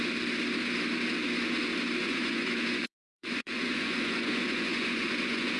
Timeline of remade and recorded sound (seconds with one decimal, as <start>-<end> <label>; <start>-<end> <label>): 0.0-2.0 recorded; 2.0-5.6 remade